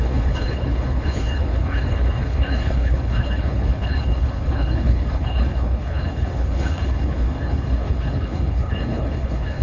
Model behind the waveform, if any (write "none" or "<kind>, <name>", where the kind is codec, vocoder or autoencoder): codec, HILCodec